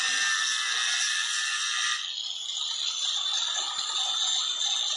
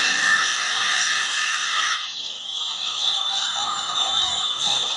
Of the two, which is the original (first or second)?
first